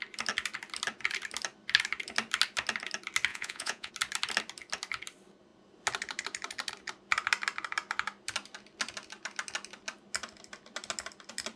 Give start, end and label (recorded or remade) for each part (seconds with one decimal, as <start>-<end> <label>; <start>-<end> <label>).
0.0-3.3 recorded; 3.3-3.9 remade; 3.9-11.6 recorded